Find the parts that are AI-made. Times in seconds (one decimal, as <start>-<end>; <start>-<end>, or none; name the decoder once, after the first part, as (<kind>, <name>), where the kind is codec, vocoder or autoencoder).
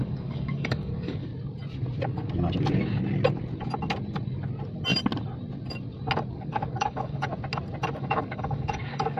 0.0-1.3 (codec, DAC); 6.3-7.3; 8.0-9.2